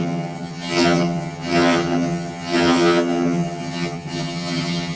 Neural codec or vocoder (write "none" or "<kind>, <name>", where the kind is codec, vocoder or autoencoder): vocoder, HiFi-GAN